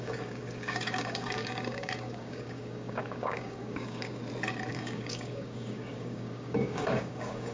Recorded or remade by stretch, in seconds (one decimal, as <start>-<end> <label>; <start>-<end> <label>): 0.0-4.2 remade; 4.2-4.7 recorded; 4.7-7.5 remade